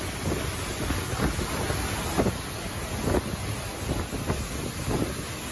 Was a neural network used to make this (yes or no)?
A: no